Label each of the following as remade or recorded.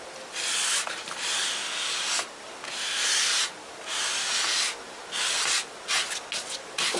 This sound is recorded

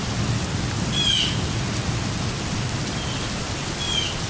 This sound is recorded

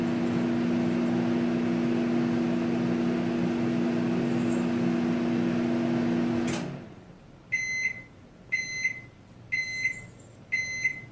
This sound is recorded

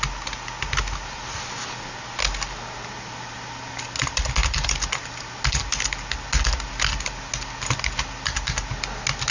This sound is recorded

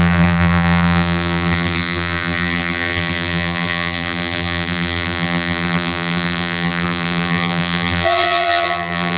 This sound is remade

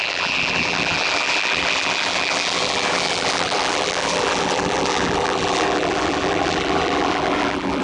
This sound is remade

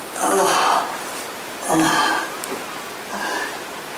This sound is recorded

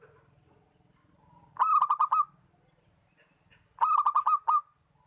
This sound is recorded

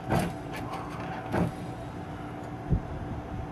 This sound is recorded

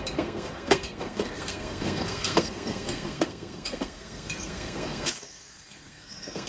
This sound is remade